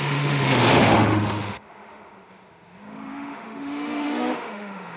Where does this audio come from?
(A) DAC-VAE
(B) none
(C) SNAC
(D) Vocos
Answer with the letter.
A